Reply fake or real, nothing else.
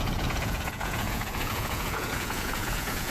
fake